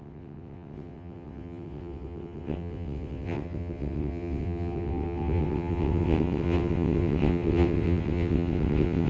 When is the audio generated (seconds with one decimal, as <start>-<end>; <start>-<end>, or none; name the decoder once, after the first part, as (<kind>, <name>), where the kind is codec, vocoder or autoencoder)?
0.0-9.1 (vocoder, WaveNeXt)